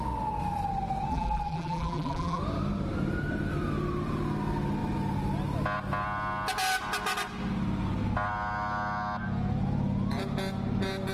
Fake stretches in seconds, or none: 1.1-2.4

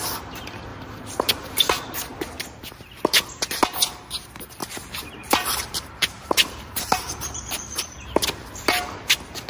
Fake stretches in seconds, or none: 0.7-1.3; 4.6-8.2

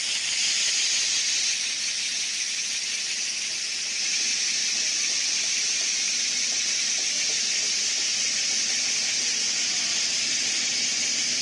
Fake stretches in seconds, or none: 4.6-7.1

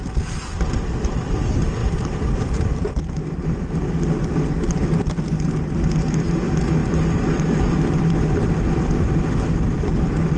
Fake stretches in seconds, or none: 1.8-2.9